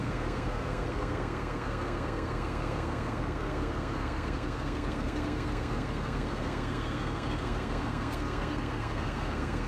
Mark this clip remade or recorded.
remade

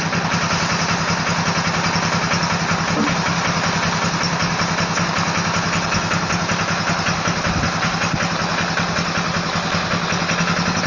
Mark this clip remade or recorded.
recorded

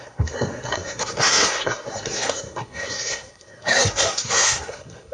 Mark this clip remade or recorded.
remade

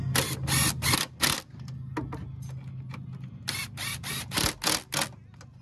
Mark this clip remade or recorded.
recorded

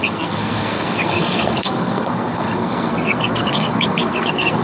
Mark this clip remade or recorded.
remade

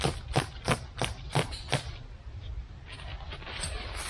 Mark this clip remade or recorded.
recorded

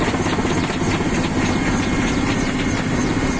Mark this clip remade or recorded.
recorded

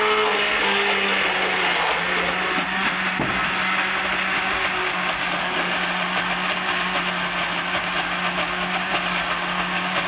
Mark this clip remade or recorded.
recorded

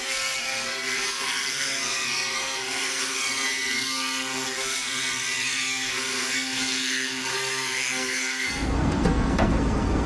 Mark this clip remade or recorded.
remade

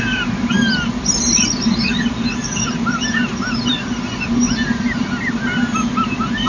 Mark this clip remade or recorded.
recorded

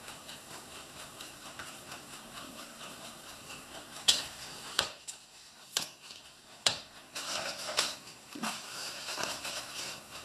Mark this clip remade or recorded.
remade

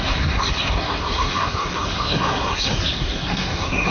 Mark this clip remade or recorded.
remade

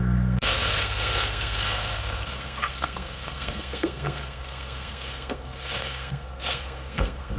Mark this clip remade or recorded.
remade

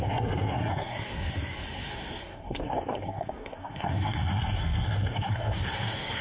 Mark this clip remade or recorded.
remade